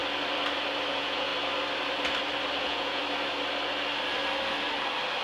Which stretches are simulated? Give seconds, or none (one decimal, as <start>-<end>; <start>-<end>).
0.9-1.3; 2.6-3.0